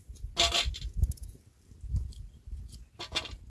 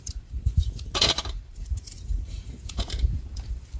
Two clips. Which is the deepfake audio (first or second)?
second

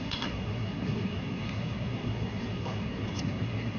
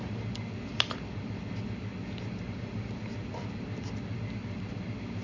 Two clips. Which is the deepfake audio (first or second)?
first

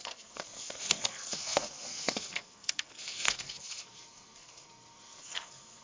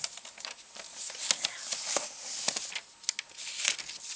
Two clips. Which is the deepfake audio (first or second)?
first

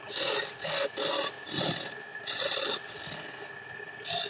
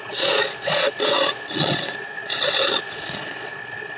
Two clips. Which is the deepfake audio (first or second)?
second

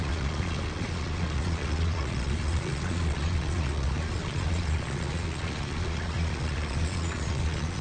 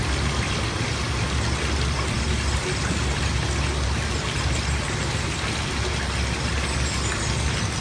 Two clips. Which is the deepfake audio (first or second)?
first